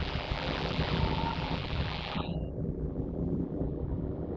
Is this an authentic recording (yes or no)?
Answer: no